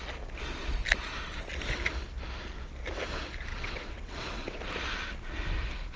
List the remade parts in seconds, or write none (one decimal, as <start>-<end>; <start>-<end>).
3.5-4.6